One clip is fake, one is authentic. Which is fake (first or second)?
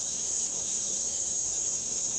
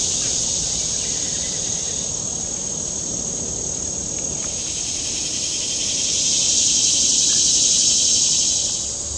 first